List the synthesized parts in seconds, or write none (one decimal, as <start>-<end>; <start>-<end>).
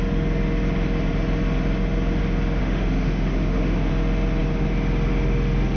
2.6-3.9